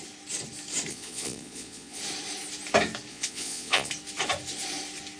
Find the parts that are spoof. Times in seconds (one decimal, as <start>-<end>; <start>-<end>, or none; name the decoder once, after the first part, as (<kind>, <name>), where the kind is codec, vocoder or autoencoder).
0.9-2.0 (vocoder, Vocos); 3.1-3.9